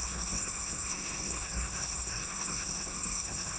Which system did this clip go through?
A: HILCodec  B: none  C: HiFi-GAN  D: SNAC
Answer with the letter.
D